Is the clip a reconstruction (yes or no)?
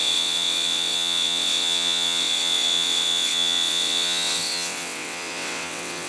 yes